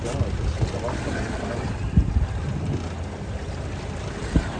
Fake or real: real